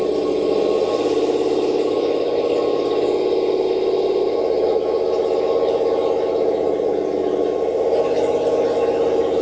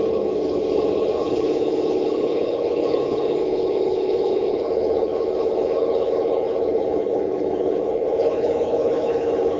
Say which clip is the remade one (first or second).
second